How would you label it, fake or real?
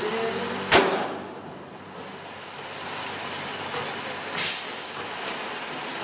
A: real